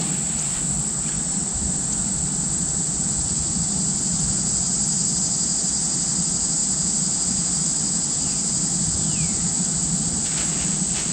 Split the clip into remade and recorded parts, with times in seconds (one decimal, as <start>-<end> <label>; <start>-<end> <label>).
0.0-11.1 recorded